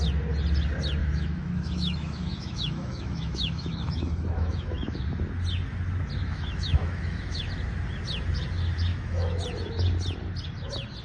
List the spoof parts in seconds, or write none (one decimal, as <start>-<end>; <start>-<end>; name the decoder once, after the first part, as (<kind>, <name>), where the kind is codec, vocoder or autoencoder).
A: 1.0-5.0 (autoencoder, DAC-VAE); 6.3-7.5; 8.9-9.4